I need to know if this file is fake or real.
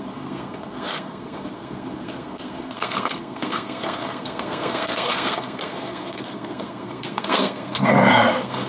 fake